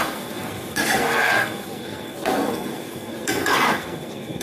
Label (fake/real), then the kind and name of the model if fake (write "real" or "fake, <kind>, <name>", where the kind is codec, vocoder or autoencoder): fake, codec, SNAC